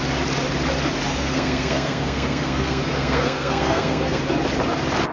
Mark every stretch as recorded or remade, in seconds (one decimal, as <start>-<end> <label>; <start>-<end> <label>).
0.0-1.1 recorded; 1.1-4.2 remade; 4.2-5.1 recorded